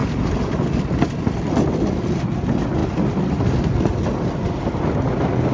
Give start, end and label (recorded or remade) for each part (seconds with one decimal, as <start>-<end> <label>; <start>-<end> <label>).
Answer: 0.0-5.5 recorded